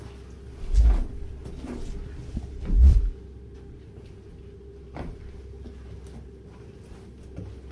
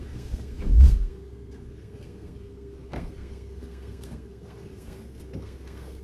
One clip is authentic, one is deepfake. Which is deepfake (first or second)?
second